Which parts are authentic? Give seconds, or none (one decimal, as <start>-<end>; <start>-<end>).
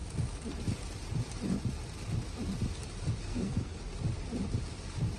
0.0-3.2; 3.8-5.2